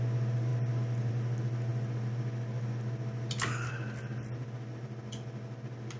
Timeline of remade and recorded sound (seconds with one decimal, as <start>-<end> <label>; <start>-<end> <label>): 0.0-6.0 recorded